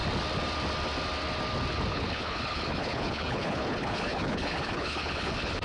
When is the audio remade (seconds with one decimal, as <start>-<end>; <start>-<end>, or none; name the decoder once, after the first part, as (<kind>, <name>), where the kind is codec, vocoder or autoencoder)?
1.9-5.6 (codec, HILCodec)